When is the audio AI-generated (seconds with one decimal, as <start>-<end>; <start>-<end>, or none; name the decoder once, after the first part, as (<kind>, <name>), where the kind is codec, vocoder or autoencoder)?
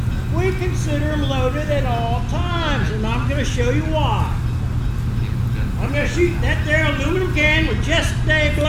none